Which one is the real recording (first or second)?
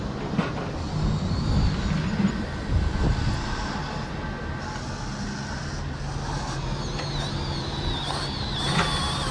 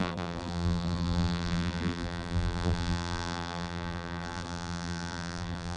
first